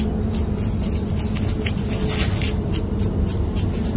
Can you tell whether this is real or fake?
real